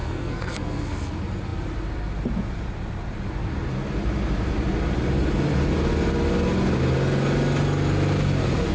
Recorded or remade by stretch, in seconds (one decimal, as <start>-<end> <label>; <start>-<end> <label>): 0.0-1.1 remade; 1.1-8.7 recorded